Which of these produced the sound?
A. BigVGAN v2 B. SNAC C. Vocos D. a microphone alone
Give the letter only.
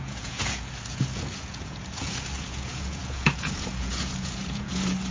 C